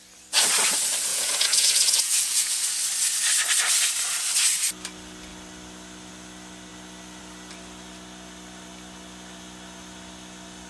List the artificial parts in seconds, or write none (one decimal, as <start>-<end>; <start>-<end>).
1.1-2.7